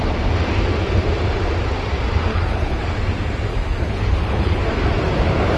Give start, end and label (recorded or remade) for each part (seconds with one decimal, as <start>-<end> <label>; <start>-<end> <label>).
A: 0.0-2.3 recorded; 2.3-2.8 remade; 2.8-3.5 recorded; 3.5-4.6 remade; 4.6-5.6 recorded